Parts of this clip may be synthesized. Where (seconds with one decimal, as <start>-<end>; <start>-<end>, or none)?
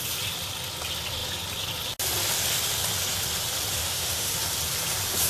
3.8-4.3